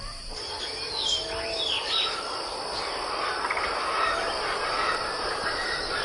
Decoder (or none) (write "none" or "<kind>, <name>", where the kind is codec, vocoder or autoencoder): none